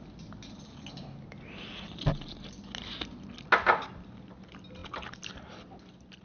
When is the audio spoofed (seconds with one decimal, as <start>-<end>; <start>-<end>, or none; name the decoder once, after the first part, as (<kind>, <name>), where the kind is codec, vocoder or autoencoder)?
none